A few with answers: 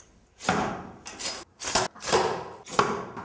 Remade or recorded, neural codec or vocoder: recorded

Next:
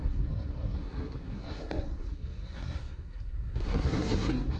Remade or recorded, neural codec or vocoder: remade, codec, SNAC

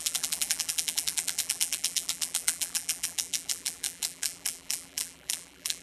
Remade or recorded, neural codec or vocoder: remade, vocoder, BigVGAN v2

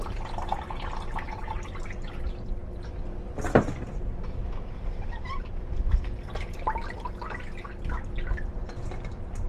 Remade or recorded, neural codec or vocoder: recorded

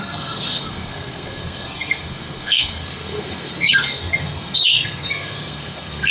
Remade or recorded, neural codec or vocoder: remade, codec, SNAC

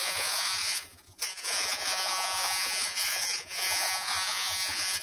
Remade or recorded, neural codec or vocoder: remade, vocoder, Vocos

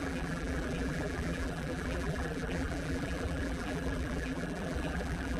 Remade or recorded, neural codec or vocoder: remade, vocoder, BigVGAN v2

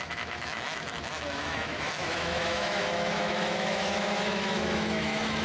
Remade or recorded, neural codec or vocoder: remade, autoencoder, DAC-VAE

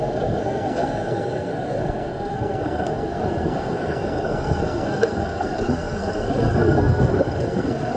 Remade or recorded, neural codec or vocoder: remade, codec, SNAC